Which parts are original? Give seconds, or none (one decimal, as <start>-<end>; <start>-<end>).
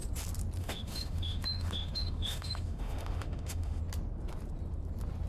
0.0-0.6; 3.8-5.3